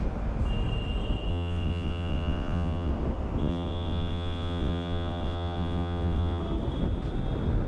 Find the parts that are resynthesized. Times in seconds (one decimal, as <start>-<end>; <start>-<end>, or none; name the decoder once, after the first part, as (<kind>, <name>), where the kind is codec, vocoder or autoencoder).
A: 1.3-2.9 (vocoder, WaveNeXt); 3.4-6.4